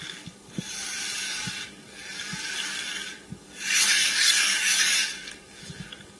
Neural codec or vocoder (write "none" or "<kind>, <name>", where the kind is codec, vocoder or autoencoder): codec, DAC